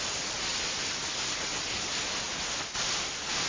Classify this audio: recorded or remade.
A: recorded